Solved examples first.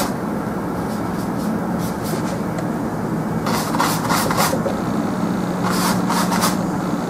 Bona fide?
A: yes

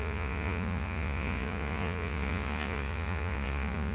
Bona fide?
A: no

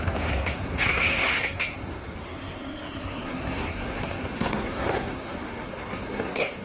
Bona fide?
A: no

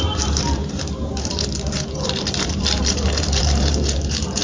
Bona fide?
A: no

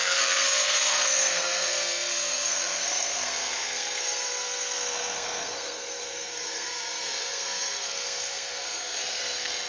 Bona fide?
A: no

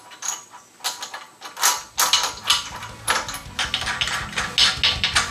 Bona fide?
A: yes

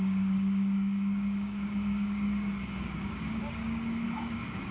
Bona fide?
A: no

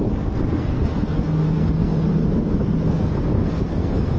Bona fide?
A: no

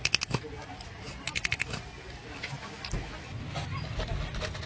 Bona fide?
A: yes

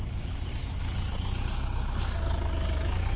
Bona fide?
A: yes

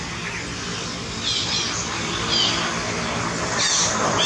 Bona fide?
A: yes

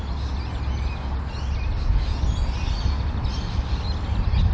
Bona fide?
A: yes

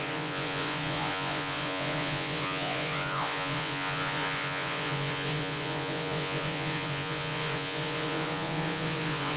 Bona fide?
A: no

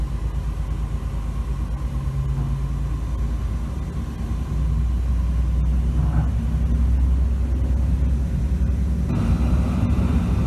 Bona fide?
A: yes